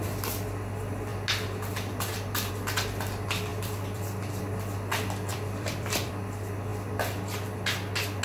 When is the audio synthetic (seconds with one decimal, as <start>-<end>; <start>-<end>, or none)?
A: 3.5-4.4; 5.3-6.1